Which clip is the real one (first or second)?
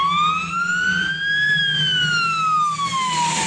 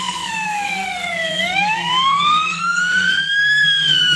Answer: first